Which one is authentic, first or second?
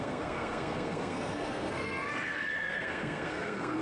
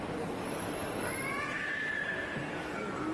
second